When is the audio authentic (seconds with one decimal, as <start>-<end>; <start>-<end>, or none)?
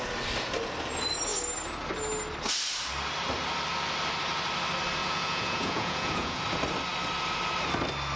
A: 0.0-5.0; 6.4-8.2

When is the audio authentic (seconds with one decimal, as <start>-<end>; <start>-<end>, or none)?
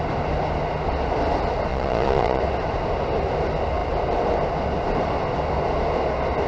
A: 0.0-1.7; 2.4-6.5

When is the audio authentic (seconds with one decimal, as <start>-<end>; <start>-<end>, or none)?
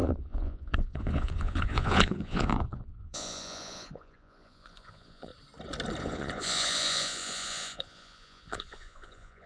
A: 5.3-6.0